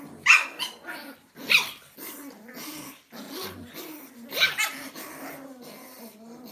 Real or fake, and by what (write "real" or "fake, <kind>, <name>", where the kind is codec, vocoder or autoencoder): real